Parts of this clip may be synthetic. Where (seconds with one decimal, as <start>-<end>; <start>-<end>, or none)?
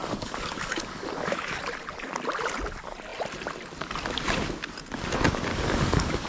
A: 0.0-1.6; 5.5-6.3